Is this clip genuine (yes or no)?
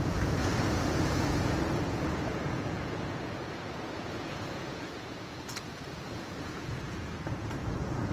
no